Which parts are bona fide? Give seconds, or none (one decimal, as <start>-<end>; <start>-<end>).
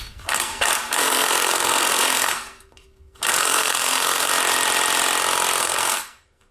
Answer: 4.3-5.6